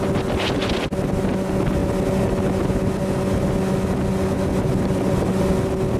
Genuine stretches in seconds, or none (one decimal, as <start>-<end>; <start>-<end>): 0.0-6.0